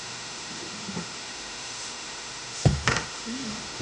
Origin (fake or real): fake